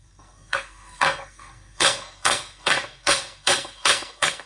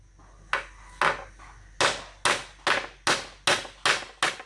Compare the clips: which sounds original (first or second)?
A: second